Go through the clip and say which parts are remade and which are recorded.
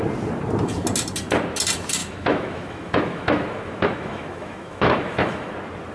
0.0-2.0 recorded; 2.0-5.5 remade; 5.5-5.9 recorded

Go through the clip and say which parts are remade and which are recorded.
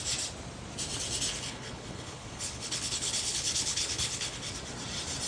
0.0-1.3 recorded; 1.3-4.5 remade; 4.5-5.3 recorded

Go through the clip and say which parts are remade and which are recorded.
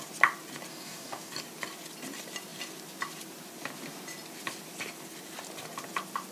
0.0-0.7 recorded; 0.7-1.3 remade; 1.3-6.3 recorded